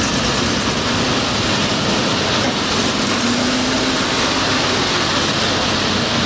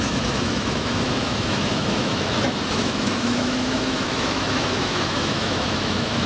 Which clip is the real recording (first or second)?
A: first